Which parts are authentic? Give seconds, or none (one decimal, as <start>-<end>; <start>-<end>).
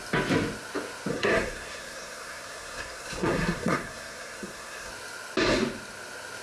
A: 0.0-1.1; 4.9-6.4